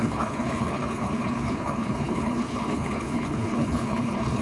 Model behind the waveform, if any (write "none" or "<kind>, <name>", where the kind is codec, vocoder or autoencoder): codec, HILCodec